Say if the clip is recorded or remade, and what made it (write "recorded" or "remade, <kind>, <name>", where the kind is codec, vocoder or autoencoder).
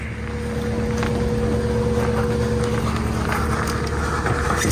recorded